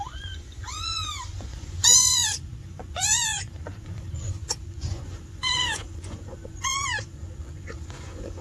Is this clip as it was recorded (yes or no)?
no